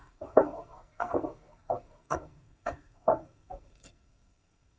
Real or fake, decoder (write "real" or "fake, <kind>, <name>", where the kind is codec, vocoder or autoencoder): fake, codec, SNAC